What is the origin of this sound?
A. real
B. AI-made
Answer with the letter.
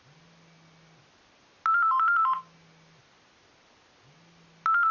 A